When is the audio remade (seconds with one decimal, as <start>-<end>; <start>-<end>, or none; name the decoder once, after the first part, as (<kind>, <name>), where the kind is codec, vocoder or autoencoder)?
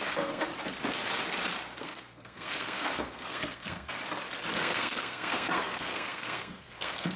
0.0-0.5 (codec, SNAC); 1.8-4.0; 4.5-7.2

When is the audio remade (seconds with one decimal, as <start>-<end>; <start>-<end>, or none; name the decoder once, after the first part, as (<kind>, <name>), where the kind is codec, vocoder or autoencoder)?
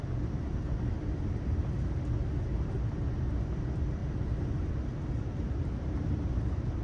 none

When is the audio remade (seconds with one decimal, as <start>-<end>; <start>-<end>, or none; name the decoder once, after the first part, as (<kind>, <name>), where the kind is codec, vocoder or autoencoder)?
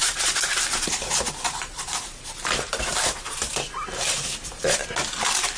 0.0-3.4 (vocoder, BigVGAN v2)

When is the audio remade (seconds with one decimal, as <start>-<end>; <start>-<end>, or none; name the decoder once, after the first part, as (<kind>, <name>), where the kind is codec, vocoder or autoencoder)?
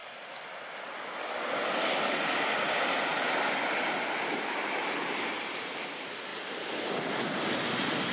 none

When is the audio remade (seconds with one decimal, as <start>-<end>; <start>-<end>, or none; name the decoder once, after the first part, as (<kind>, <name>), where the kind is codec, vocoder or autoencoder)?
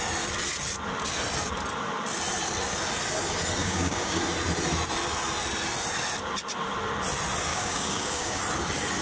3.6-4.2 (codec, DAC); 7.5-8.4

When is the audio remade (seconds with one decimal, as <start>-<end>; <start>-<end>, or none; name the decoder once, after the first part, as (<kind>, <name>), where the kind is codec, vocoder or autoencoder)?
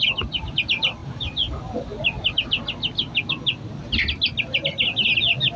none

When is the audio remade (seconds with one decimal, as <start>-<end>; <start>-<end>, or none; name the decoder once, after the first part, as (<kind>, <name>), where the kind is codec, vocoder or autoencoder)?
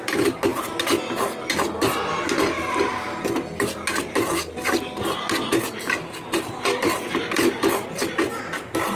none